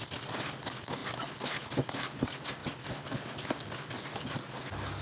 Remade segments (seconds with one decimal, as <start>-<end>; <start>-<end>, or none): none